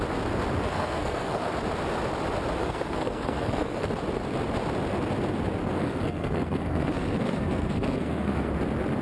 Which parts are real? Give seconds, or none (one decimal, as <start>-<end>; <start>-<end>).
0.0-0.7; 1.5-2.6; 3.9-5.6; 8.5-9.0